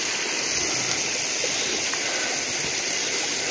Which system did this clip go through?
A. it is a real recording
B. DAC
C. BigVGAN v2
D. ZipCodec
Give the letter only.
A